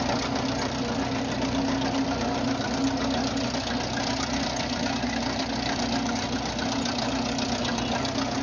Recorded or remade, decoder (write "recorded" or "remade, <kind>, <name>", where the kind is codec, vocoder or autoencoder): recorded